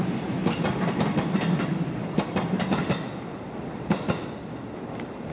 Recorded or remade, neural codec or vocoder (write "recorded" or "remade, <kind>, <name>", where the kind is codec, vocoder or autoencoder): recorded